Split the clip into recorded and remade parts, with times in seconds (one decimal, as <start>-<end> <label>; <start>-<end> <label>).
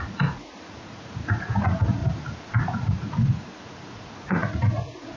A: 0.0-2.0 remade; 2.0-2.6 recorded; 2.6-5.2 remade